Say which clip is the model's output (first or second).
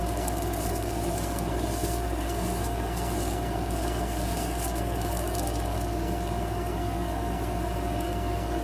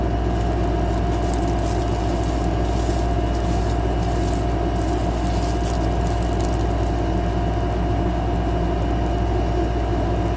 first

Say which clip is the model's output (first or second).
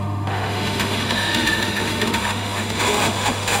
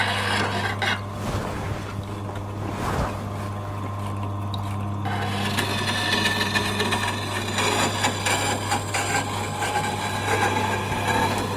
first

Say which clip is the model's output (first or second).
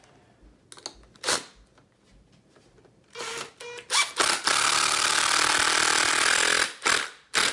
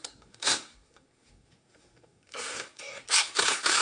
second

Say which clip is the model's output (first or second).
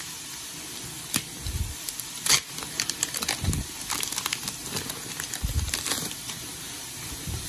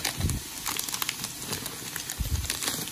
first